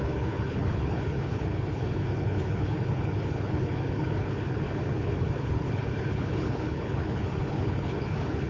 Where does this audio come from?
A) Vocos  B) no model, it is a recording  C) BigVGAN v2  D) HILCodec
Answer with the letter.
D